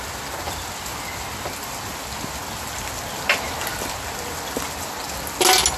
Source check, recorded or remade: recorded